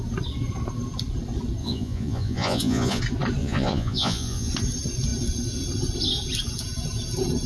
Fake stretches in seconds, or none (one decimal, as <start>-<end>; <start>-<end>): 1.6-3.0; 3.4-4.5